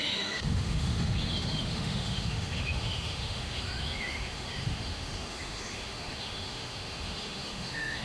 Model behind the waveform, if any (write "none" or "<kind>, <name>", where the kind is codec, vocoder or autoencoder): autoencoder, DAC-VAE